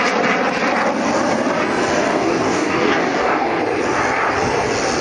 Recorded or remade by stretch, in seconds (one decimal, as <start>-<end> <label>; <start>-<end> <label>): 0.0-2.1 recorded; 2.1-3.6 remade; 3.6-5.0 recorded